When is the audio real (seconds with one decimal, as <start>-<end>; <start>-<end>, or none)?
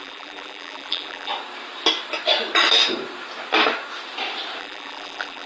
1.3-4.6